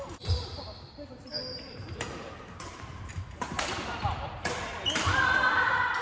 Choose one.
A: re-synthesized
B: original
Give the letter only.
A